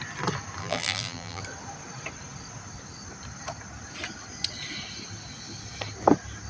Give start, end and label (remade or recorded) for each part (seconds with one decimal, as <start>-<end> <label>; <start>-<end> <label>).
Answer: 0.0-0.6 recorded; 0.6-1.4 remade; 1.4-6.5 recorded